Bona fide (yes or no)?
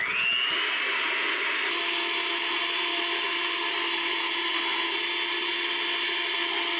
yes